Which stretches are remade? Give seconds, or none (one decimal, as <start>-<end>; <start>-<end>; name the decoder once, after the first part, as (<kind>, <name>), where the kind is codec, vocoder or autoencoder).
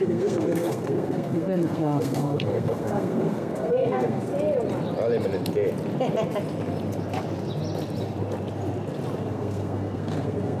0.0-4.3 (codec, SNAC); 9.3-10.6